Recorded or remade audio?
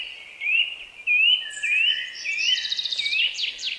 recorded